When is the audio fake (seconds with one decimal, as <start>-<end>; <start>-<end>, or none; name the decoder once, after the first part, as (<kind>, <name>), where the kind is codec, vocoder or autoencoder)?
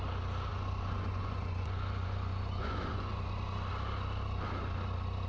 0.5-3.7 (vocoder, Vocos)